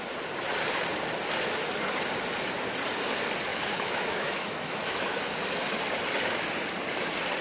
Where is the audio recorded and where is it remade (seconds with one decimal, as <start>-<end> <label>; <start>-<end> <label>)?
0.0-3.5 recorded; 3.5-5.2 remade; 5.2-7.4 recorded